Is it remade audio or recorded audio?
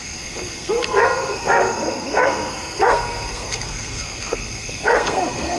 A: remade